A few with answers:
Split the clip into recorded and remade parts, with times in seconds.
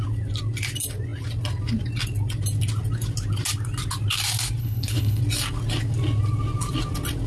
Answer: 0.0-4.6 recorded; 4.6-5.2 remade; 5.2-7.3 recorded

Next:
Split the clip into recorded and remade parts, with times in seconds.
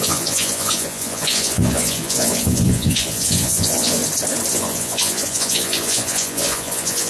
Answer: 0.0-4.0 remade; 4.0-4.5 recorded; 4.5-7.1 remade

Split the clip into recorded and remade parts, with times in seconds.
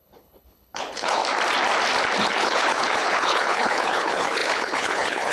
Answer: 0.0-1.2 remade; 1.2-2.3 recorded; 2.3-5.3 remade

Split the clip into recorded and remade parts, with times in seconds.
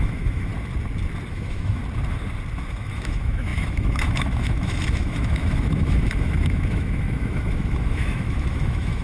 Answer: 0.0-0.5 remade; 0.5-1.3 recorded; 1.3-1.8 remade; 1.8-2.7 recorded; 2.7-9.0 remade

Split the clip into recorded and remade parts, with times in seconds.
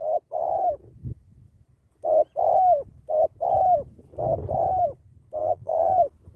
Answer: 0.0-5.4 recorded; 5.4-6.0 remade; 6.0-6.4 recorded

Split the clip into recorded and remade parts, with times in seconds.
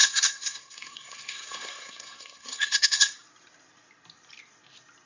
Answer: 0.0-3.1 remade; 3.1-5.1 recorded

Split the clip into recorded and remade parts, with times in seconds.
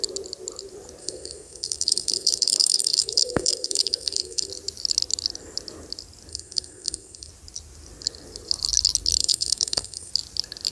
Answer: 0.0-1.0 recorded; 1.0-4.5 remade; 4.5-6.3 recorded; 6.3-7.3 remade; 7.3-9.2 recorded; 9.2-10.1 remade; 10.1-10.7 recorded